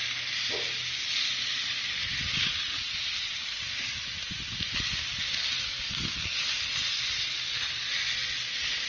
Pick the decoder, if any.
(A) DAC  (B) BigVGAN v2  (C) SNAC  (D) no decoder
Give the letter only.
D